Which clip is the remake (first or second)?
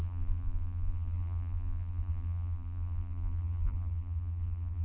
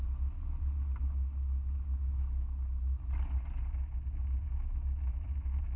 first